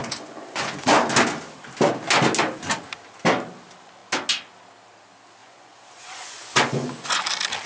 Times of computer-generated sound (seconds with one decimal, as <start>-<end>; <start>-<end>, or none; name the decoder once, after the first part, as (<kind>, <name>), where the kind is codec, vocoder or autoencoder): 0.0-1.0 (vocoder, Vocos); 5.4-7.2